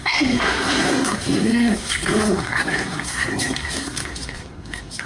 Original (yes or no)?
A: no